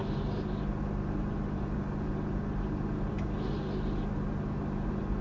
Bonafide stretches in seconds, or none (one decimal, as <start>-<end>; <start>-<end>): 0.0-5.2